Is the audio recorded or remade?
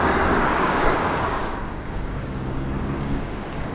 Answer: remade